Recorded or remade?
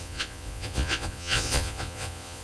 remade